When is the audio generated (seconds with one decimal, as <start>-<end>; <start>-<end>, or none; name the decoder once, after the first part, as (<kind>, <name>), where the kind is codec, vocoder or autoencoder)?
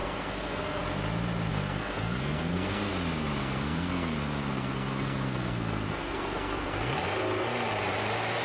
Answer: 0.0-0.8 (codec, SNAC); 1.5-2.9; 3.4-7.0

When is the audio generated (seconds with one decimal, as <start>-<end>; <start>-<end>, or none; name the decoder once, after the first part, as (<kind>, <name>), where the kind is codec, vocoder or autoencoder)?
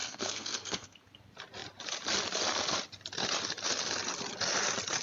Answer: 0.0-1.0 (codec, SNAC)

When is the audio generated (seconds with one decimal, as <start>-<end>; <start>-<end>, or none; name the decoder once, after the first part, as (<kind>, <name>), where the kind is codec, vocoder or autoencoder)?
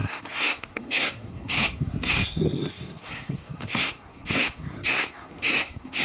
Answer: 0.0-6.0 (codec, SNAC)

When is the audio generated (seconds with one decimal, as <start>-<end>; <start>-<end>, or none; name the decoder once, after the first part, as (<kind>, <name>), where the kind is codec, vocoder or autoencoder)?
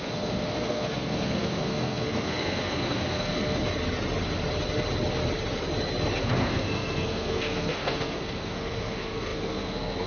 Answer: 0.0-3.6 (codec, SNAC); 6.2-10.1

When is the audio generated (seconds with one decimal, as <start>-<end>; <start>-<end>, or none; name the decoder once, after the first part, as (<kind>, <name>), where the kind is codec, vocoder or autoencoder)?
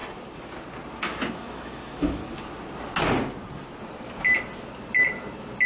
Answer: 1.3-2.2 (autoencoder, DAC-VAE)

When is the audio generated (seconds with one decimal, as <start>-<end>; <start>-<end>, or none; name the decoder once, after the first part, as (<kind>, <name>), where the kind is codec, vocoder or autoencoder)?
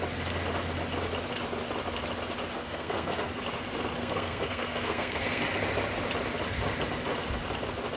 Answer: 2.6-3.4 (codec, SNAC); 4.0-5.4